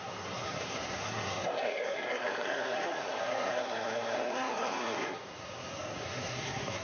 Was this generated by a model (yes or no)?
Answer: yes